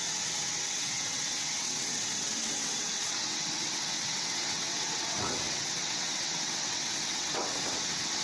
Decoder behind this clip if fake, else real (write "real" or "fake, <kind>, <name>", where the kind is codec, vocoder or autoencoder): fake, vocoder, WaveNeXt